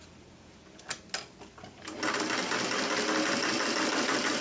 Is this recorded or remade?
recorded